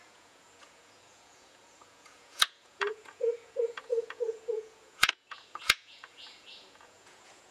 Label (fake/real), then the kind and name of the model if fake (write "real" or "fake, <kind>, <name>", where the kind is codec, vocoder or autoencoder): fake, vocoder, Vocos